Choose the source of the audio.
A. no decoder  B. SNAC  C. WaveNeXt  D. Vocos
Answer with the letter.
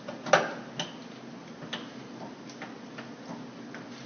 A